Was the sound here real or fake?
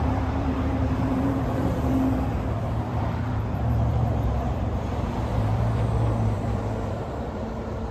fake